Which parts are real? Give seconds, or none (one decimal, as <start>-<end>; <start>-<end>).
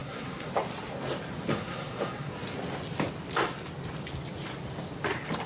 0.5-1.5; 2.3-5.5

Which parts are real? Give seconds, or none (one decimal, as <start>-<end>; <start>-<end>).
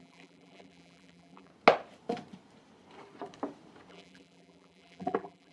1.5-3.9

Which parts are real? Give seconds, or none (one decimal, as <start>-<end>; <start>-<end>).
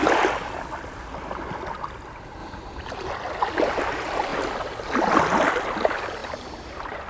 0.0-4.3; 5.4-6.2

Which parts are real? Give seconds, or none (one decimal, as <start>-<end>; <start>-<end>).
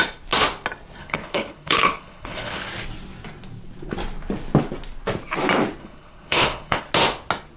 0.0-1.0; 2.6-5.8; 6.9-7.6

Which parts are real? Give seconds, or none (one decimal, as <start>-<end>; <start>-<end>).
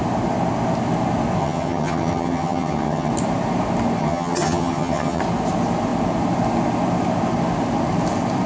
0.0-1.4; 3.1-4.0; 5.2-8.5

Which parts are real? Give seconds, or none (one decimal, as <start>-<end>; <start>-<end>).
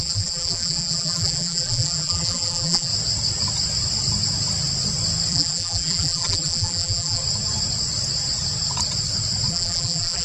2.9-5.3; 7.2-9.5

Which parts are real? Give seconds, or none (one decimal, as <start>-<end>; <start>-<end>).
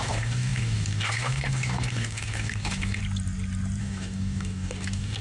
3.0-3.8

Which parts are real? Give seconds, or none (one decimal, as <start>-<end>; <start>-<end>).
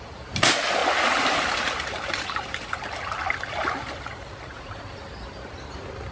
0.0-6.1